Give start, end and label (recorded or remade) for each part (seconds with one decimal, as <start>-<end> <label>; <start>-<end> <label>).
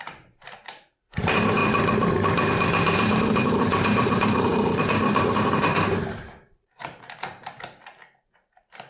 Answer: 0.0-1.6 remade; 1.6-2.5 recorded; 2.5-8.9 remade